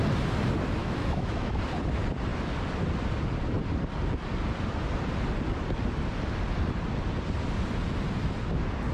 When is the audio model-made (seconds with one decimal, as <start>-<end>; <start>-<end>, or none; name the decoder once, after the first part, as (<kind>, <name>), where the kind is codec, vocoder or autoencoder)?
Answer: 0.8-1.5 (autoencoder, DAC-VAE)